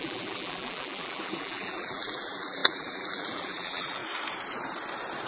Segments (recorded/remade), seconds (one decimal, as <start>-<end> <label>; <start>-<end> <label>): 0.0-4.0 remade; 4.0-5.3 recorded